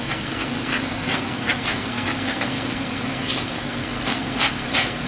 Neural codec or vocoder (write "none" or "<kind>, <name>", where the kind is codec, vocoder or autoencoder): codec, SNAC